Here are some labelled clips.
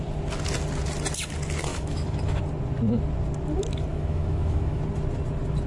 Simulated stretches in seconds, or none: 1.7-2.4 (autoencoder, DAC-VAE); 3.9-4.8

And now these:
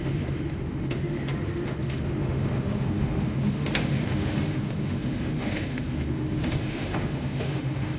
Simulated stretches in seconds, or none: 0.0-8.0 (autoencoder, DAC-VAE)

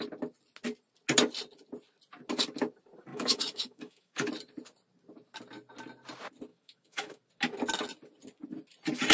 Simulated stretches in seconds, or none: 3.1-4.3 (autoencoder, DAC-VAE); 6.5-7.2

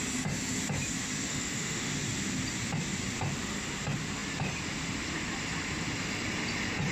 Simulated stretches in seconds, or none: 1.3-1.9 (autoencoder, DAC-VAE)

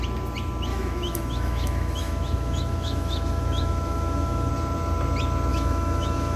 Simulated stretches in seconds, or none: 0.7-4.5 (autoencoder, DAC-VAE); 5.5-6.4